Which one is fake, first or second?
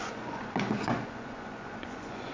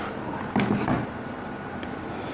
first